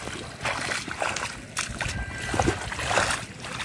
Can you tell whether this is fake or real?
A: real